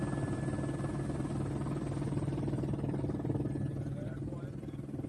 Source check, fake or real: real